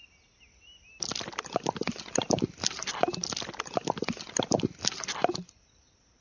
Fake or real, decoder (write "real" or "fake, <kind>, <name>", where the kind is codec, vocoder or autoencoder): real